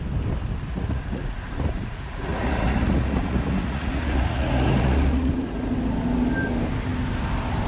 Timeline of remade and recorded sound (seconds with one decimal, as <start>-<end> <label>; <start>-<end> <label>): 0.0-0.7 recorded; 0.7-5.3 remade; 5.3-7.7 recorded